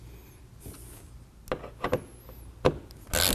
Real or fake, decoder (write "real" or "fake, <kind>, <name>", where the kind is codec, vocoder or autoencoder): real